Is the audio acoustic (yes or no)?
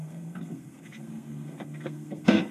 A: no